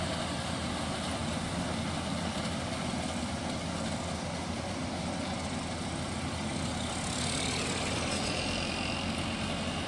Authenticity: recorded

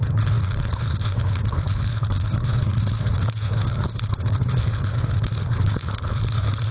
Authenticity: remade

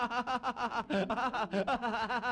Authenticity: recorded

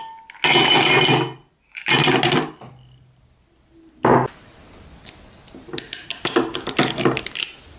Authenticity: recorded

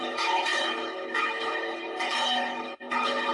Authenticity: remade